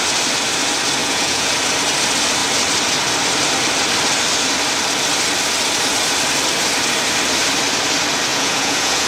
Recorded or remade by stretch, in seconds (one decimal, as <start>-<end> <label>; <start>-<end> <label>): 0.0-1.0 recorded; 1.0-1.5 remade; 1.5-8.3 recorded; 8.3-9.1 remade

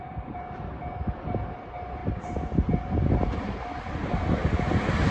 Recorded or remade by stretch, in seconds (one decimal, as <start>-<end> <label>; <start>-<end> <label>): 0.0-5.1 recorded

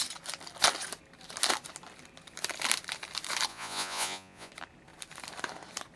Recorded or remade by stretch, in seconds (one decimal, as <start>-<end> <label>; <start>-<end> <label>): 0.0-3.5 recorded; 3.5-4.5 remade; 4.5-6.0 recorded

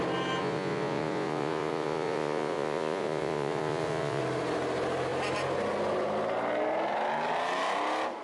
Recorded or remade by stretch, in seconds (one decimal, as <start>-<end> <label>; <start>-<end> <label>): 0.0-0.4 recorded; 0.4-4.2 remade; 4.2-8.2 recorded

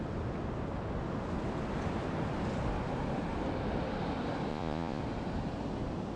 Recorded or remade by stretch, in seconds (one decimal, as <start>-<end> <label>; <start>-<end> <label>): 0.0-4.5 recorded; 4.5-5.0 remade; 5.0-6.2 recorded

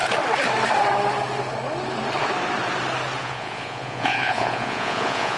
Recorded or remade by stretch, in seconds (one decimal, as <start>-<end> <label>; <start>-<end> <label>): 0.0-3.2 recorded; 3.2-5.4 remade